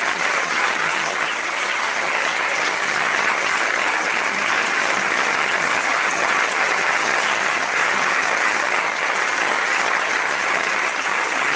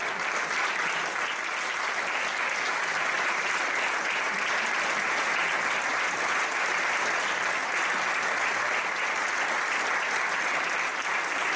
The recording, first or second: second